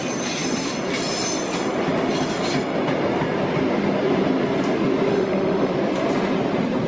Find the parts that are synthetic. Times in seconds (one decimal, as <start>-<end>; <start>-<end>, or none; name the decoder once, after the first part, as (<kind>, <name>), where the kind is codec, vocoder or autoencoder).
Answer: 5.1-5.7 (autoencoder, DAC-VAE)